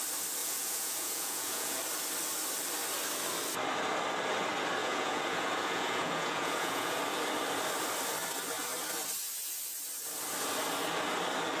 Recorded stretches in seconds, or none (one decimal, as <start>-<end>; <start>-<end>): 0.0-0.4; 1.8-4.8; 7.0-11.6